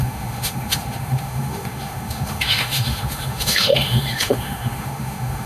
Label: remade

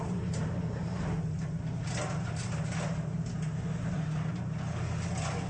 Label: recorded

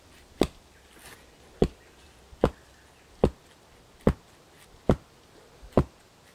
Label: recorded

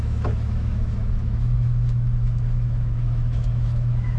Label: remade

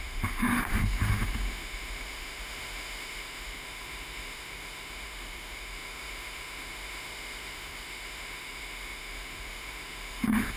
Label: remade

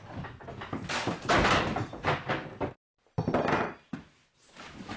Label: recorded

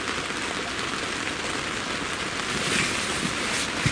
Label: recorded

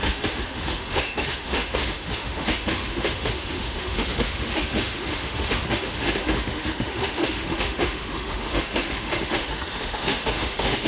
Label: remade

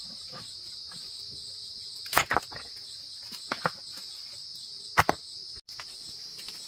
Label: recorded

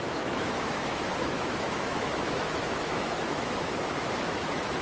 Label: remade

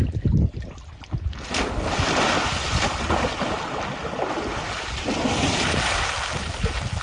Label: recorded